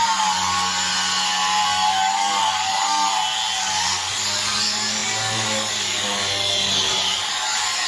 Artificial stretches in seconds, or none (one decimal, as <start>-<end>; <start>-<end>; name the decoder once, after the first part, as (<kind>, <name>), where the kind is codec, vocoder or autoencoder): 0.0-0.9 (codec, DAC); 1.6-3.1; 3.6-7.9